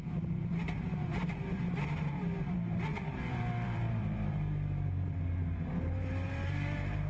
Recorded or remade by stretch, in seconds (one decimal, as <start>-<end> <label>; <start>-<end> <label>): 0.0-7.1 remade